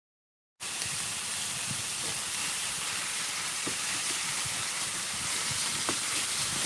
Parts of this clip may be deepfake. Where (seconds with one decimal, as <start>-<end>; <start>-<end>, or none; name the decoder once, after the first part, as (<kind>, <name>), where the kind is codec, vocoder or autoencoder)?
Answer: 2.4-6.7 (vocoder, BigVGAN v2)